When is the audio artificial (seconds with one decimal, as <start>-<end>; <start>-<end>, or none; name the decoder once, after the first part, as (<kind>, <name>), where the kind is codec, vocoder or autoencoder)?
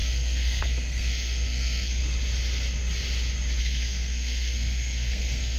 0.0-2.0 (codec, SNAC); 3.6-5.6